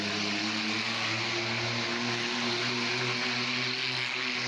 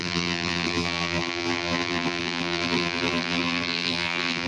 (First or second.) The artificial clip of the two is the second